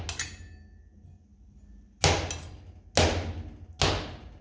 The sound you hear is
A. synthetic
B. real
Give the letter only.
B